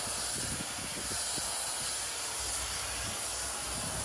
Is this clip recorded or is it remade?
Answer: recorded